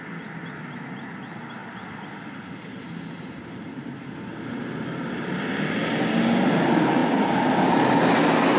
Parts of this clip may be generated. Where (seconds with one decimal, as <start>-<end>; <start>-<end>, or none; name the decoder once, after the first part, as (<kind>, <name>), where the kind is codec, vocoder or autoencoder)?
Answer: 1.6-4.1 (vocoder, BigVGAN v2); 7.0-7.9